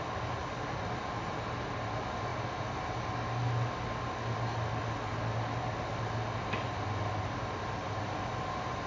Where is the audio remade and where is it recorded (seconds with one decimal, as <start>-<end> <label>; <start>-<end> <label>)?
0.0-8.9 recorded